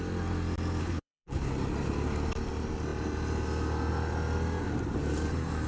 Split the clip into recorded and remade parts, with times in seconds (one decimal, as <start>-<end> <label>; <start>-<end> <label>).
0.0-0.8 recorded; 0.8-1.5 remade; 1.5-5.7 recorded

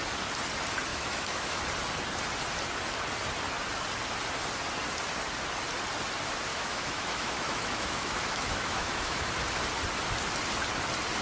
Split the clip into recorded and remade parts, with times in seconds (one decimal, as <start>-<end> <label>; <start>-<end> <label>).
0.0-0.9 recorded; 0.9-1.6 remade; 1.6-6.5 recorded; 6.5-9.3 remade; 9.3-11.2 recorded